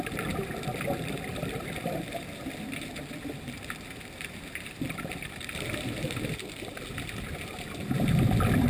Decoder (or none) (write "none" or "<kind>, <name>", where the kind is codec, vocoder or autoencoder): vocoder, BigVGAN v2